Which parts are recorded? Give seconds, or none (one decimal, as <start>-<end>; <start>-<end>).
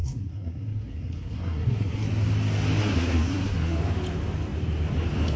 2.1-2.8; 3.8-5.4